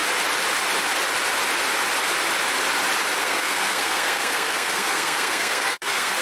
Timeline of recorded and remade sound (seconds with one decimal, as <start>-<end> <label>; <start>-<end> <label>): 0.0-3.2 recorded; 3.2-6.2 remade